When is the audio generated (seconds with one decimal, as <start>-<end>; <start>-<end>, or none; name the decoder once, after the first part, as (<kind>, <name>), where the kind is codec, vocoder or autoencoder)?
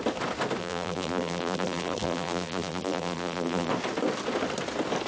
0.6-3.7 (vocoder, BigVGAN v2)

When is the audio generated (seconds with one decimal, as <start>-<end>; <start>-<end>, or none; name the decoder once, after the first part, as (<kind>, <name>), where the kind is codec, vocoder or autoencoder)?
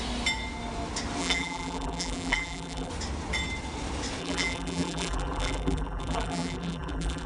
1.2-2.9 (vocoder, BigVGAN v2); 4.2-7.3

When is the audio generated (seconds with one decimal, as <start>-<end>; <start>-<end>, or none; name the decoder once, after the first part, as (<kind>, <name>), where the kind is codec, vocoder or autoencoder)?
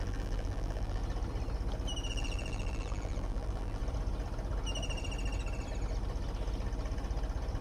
0.0-1.0 (vocoder, BigVGAN v2); 2.1-3.8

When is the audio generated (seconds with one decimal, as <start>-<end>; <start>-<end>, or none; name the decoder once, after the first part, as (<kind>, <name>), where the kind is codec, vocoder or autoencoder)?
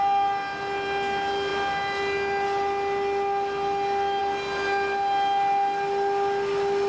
none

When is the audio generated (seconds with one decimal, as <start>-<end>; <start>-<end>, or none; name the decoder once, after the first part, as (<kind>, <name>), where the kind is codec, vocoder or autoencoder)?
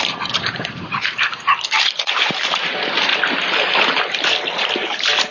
0.0-3.1 (vocoder, BigVGAN v2); 4.0-5.3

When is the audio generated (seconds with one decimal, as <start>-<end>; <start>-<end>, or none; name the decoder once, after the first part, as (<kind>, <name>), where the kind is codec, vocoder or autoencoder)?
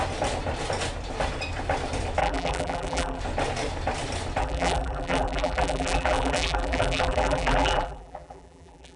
2.2-3.2 (vocoder, BigVGAN v2); 4.4-9.0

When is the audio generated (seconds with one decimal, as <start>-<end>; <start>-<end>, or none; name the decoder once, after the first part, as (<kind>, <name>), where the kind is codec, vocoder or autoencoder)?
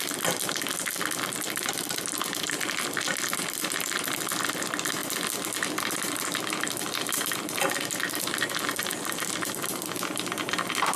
none